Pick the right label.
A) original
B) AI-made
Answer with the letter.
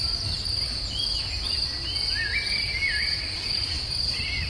A